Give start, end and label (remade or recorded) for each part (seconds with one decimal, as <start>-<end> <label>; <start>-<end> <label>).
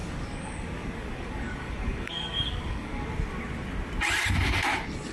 0.0-3.1 remade; 3.1-5.1 recorded